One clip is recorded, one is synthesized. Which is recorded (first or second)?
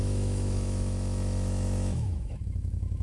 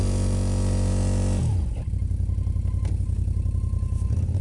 second